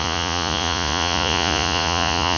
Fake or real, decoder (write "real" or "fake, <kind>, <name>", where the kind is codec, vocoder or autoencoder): fake, vocoder, Vocos